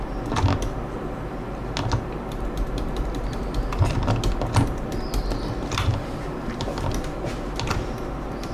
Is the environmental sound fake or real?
real